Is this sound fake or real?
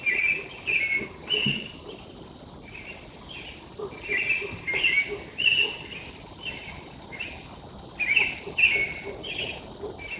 real